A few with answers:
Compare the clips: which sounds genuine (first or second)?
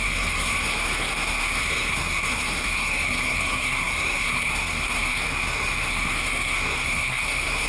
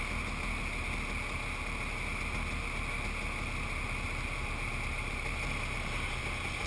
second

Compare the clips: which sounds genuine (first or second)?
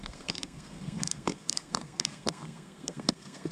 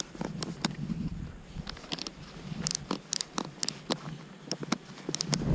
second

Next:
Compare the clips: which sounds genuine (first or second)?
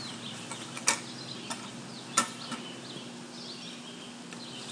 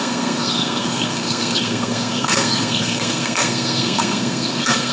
first